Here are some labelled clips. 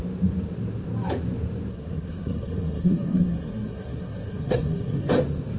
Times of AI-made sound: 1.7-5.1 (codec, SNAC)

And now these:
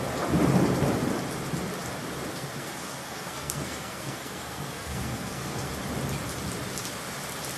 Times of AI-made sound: 2.3-5.7 (codec, SNAC)

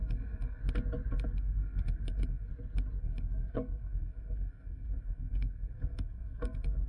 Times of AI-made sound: 0.0-0.6 (codec, SNAC); 1.1-2.5; 3.0-6.9

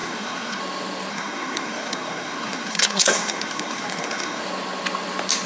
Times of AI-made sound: 0.0-0.6 (codec, SNAC); 1.1-4.4

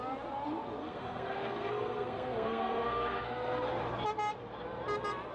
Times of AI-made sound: 0.8-3.7 (codec, SNAC)